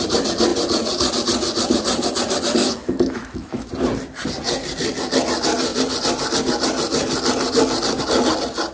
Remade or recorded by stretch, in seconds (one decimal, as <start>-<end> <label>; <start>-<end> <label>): 0.0-2.6 recorded; 2.6-3.7 remade; 3.7-8.7 recorded